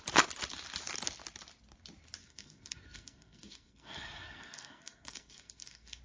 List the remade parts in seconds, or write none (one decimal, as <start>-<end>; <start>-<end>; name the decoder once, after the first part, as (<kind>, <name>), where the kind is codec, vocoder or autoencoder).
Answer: 2.2-6.0 (codec, SNAC)